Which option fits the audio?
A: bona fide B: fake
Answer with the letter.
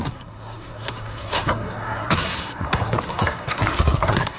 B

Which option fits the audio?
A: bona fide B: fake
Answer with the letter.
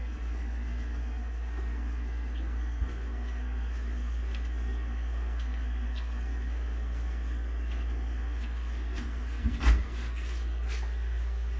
B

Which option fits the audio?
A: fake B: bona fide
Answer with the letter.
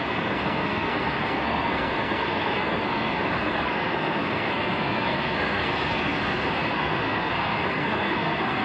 A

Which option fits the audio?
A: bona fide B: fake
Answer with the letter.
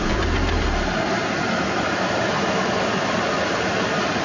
A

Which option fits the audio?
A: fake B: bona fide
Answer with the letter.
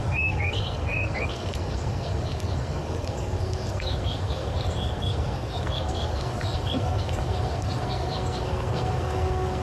A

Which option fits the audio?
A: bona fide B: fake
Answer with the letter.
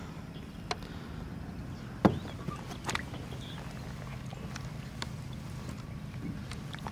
A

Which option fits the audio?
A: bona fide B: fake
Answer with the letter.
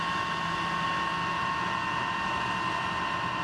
A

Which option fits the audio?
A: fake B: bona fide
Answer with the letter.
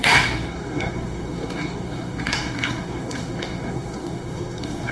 A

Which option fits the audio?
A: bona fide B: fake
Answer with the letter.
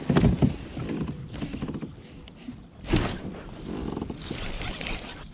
A